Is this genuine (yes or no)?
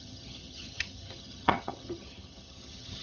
no